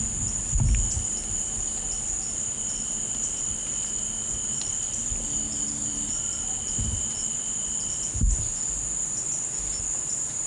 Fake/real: real